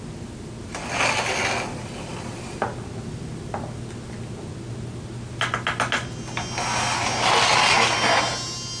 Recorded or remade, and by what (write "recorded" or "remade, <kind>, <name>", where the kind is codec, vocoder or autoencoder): recorded